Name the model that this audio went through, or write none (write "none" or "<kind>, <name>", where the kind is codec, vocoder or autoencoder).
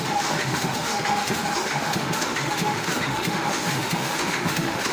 autoencoder, DAC-VAE